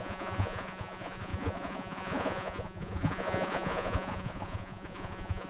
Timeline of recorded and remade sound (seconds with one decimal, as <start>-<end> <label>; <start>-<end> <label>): 0.0-5.5 remade

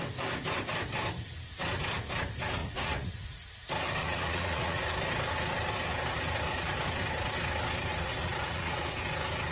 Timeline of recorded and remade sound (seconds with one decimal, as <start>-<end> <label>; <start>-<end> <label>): 0.0-2.6 recorded; 2.6-3.5 remade; 3.5-4.0 recorded; 4.0-4.8 remade; 4.8-7.9 recorded; 7.9-9.0 remade; 9.0-9.5 recorded

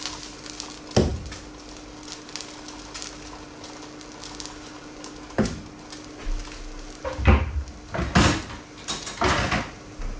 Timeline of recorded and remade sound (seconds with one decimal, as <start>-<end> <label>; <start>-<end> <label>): 0.0-10.2 recorded

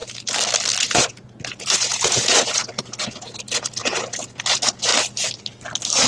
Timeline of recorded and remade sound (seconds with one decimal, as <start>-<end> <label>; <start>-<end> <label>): 0.0-0.8 recorded; 0.8-4.9 remade; 4.9-6.1 recorded

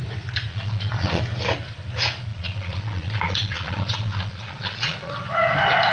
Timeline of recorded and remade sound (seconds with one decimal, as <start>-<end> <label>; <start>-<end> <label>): 0.0-0.5 recorded; 0.5-1.2 remade; 1.2-2.3 recorded; 2.3-5.1 remade; 5.1-5.9 recorded